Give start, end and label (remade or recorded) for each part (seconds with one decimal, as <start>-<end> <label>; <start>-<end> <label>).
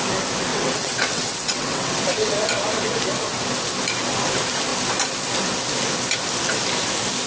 0.0-0.5 recorded; 0.5-2.3 remade; 2.3-7.3 recorded